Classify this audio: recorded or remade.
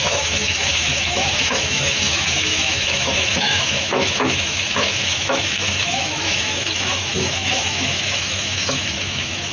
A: remade